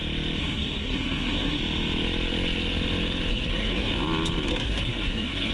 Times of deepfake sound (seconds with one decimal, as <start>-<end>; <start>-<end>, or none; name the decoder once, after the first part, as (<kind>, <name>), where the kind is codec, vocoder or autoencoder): 0.4-1.6 (codec, SNAC); 3.3-3.9; 4.5-5.5